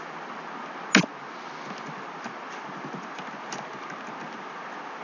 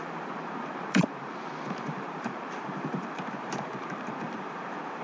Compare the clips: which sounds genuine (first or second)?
first